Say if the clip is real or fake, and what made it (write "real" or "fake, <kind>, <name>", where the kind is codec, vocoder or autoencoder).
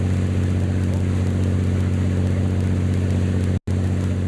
real